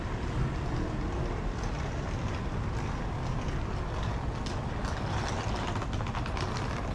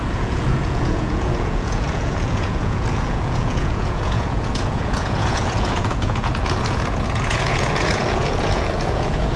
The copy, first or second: second